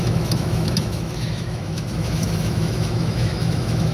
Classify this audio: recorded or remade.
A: remade